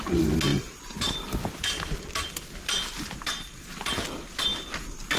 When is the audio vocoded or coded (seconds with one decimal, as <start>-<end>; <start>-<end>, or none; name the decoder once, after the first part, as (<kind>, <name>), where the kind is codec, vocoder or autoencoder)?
none